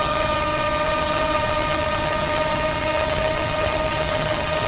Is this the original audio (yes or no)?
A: no